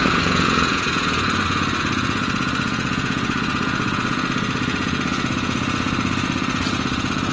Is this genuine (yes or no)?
no